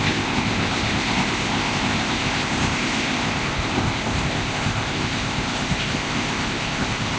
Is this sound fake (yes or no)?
yes